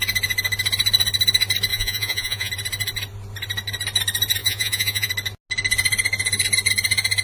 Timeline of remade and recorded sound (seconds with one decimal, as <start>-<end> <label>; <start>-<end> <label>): 0.0-1.7 recorded; 1.7-2.5 remade; 2.5-4.4 recorded; 4.4-5.1 remade; 5.1-7.2 recorded